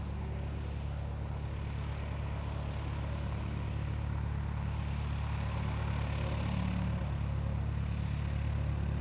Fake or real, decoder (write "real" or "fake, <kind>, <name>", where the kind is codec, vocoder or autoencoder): real